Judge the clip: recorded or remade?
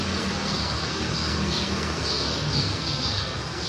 remade